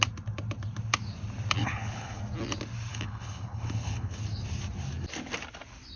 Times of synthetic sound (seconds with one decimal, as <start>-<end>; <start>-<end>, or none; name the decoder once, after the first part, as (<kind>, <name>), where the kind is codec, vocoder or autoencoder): 1.6-2.2 (codec, HILCodec); 2.9-4.2